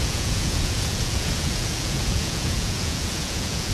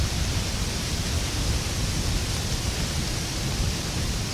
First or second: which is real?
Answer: second